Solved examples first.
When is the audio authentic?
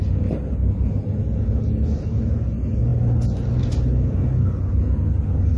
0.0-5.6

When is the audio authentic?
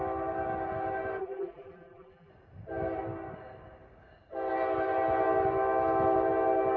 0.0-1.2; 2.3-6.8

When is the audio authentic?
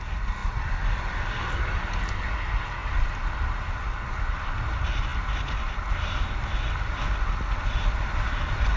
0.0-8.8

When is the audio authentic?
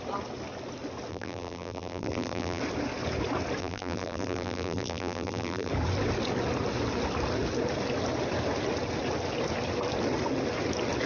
0.0-1.1; 2.6-3.6; 5.7-11.1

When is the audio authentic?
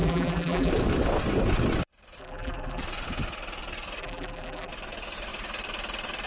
0.7-2.2; 2.8-4.0; 4.7-6.3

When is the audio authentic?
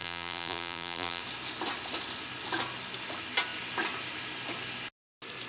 1.2-5.5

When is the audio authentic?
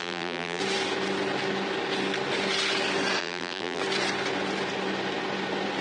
0.6-3.2; 3.8-5.8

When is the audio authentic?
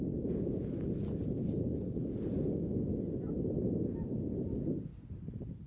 0.0-5.7